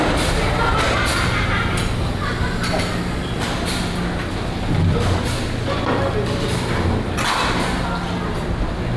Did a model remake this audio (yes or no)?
no